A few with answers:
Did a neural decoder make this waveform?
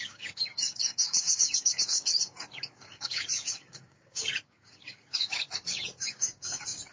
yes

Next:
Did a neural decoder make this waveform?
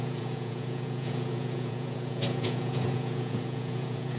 yes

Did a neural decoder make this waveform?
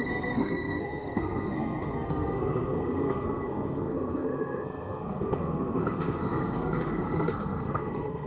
yes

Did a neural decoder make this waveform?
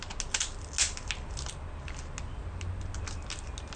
no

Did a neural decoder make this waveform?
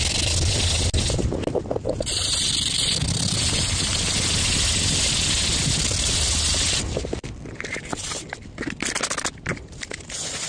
no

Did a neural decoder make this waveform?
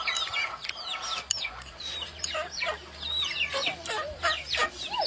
no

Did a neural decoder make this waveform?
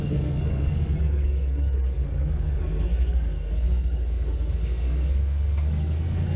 yes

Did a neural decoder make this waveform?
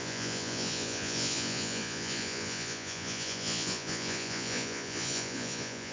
yes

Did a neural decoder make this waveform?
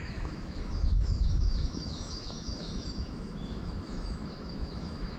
yes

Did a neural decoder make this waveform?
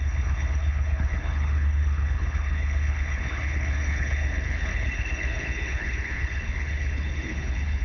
yes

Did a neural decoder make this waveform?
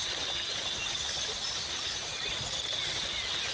no